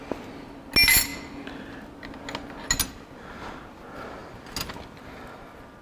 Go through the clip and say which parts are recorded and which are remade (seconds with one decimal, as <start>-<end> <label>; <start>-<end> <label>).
0.0-5.8 recorded